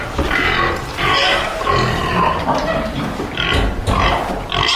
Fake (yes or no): no